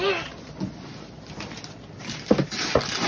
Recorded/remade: recorded